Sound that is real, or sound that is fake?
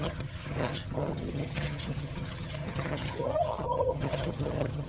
fake